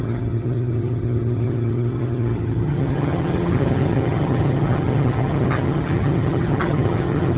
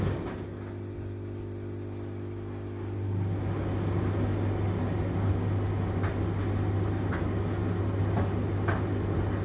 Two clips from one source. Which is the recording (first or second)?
second